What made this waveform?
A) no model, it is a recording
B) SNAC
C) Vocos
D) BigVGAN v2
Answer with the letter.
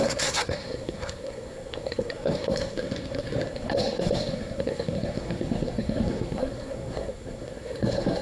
B